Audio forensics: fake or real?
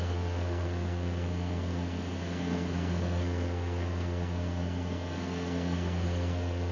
fake